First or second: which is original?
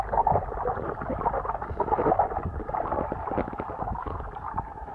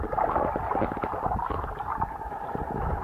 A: second